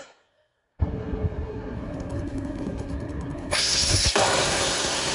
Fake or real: fake